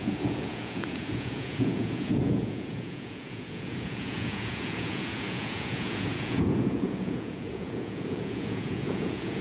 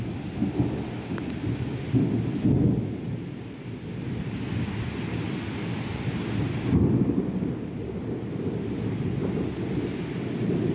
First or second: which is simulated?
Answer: first